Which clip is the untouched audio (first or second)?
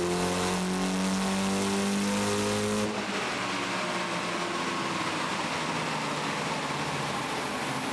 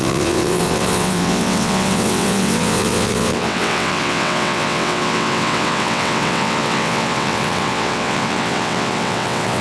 first